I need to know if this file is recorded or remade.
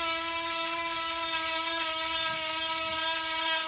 recorded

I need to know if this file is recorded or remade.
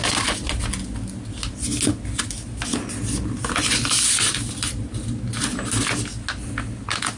recorded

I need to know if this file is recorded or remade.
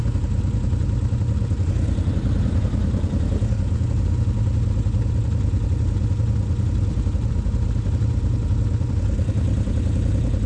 recorded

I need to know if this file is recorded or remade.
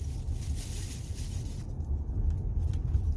recorded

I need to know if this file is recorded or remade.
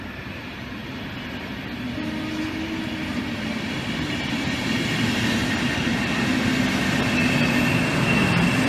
recorded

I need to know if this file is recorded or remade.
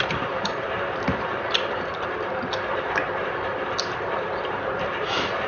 remade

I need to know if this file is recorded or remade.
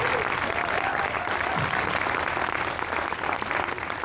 recorded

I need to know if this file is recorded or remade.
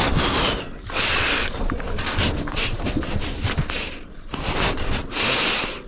recorded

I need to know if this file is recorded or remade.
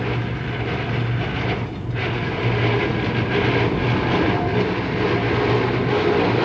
recorded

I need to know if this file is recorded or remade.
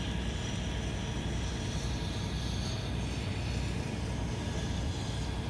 recorded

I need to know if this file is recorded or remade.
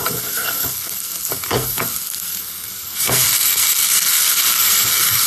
remade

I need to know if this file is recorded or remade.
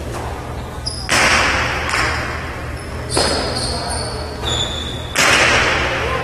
recorded